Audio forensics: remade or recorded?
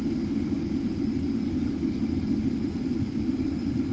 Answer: recorded